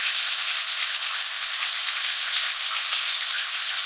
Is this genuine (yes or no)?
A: no